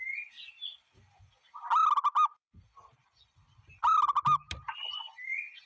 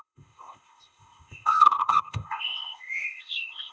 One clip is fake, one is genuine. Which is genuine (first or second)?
first